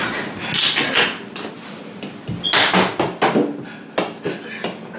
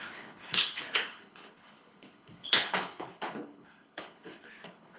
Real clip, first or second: first